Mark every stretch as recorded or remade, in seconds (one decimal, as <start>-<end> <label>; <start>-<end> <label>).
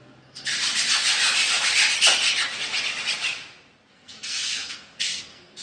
0.0-0.5 remade; 0.5-3.9 recorded; 3.9-5.6 remade